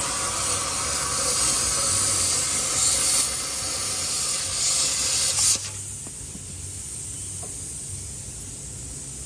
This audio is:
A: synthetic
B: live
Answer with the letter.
B